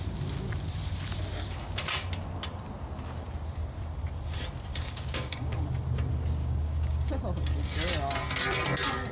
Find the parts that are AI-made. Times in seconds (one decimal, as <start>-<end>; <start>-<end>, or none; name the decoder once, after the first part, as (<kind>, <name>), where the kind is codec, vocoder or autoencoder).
4.7-5.6 (codec, DAC); 6.4-7.1